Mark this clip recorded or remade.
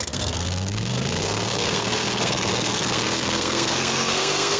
remade